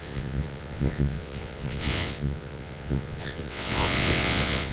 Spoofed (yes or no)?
yes